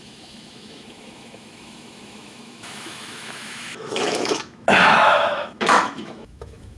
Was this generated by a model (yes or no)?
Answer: yes